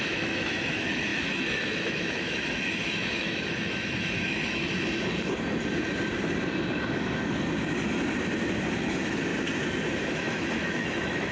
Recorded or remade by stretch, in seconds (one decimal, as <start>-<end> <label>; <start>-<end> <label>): 0.0-4.7 remade; 4.7-8.8 recorded; 8.8-9.3 remade; 9.3-10.1 recorded; 10.1-11.3 remade